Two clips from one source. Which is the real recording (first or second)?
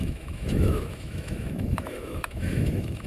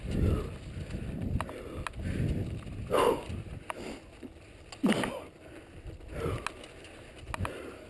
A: second